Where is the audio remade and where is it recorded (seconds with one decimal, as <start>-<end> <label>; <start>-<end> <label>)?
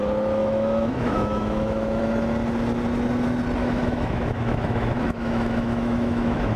0.0-0.4 recorded; 0.4-2.0 remade; 2.0-3.6 recorded; 3.6-6.6 remade